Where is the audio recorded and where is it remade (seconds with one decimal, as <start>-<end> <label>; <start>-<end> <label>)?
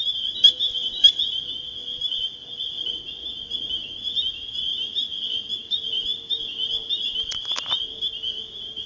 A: 0.0-0.7 recorded; 0.7-1.2 remade; 1.2-1.8 recorded; 1.8-2.9 remade; 2.9-4.7 recorded; 4.7-7.8 remade; 7.8-8.9 recorded